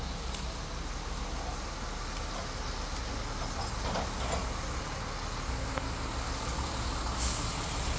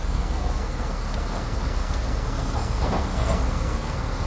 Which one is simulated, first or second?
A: second